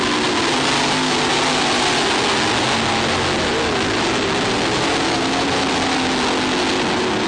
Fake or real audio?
real